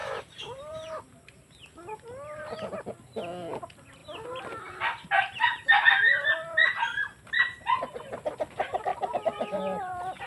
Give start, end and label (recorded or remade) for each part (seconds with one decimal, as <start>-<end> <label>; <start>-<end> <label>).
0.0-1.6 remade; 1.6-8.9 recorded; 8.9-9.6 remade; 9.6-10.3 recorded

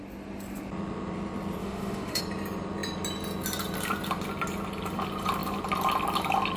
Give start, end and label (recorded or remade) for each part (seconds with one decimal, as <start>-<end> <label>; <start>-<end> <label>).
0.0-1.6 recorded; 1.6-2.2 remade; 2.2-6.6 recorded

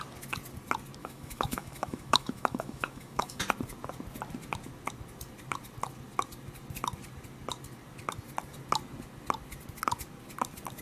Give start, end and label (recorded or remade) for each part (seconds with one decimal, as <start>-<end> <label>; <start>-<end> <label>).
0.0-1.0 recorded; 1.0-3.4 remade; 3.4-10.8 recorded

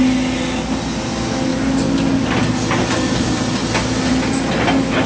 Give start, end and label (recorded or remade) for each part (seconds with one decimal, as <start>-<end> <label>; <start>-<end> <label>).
0.0-5.1 recorded

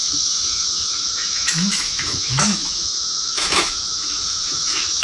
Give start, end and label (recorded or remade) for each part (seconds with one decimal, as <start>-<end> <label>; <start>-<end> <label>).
0.0-5.0 remade